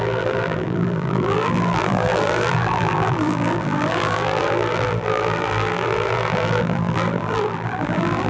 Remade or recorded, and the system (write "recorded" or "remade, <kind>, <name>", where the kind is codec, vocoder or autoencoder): remade, vocoder, BigVGAN v2